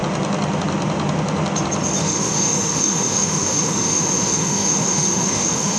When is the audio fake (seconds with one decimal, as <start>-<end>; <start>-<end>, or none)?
2.0-5.8